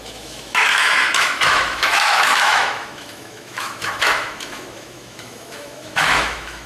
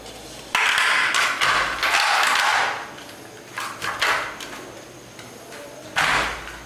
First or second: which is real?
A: second